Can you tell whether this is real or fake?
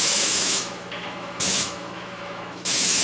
fake